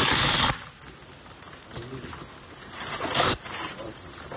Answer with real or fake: real